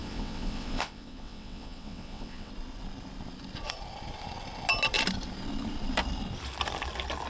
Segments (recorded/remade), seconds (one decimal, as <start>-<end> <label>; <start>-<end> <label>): 0.0-2.5 remade; 2.5-7.3 recorded